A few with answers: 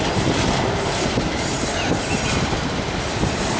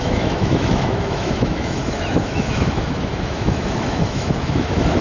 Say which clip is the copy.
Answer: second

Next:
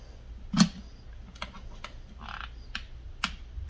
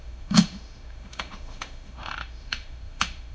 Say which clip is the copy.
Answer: second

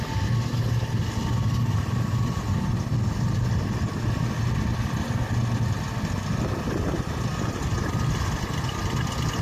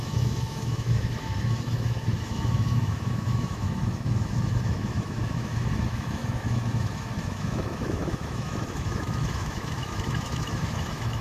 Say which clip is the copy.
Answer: second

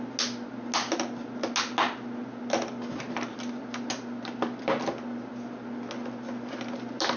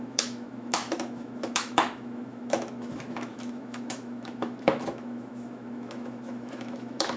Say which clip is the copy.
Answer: second